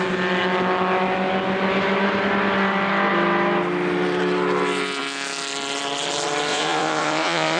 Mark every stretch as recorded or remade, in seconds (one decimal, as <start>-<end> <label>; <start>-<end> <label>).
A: 0.0-6.5 recorded; 6.5-7.6 remade